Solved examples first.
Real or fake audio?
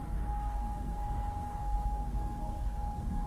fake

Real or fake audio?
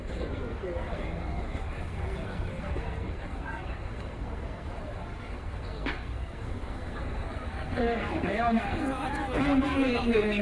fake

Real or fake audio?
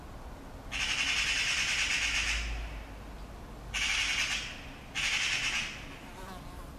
real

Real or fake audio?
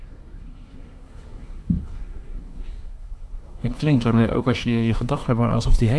fake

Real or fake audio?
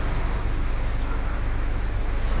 real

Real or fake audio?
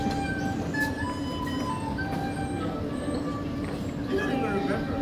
real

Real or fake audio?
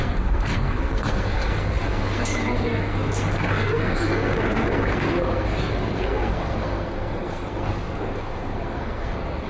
fake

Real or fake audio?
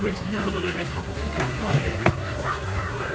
fake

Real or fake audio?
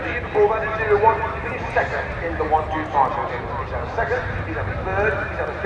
real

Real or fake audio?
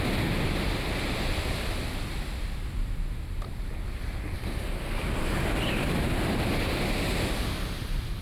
real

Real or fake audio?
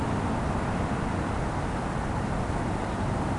real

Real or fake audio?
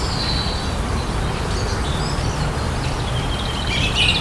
real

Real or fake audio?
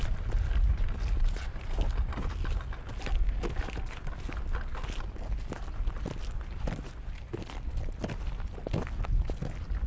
real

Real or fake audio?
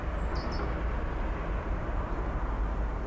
real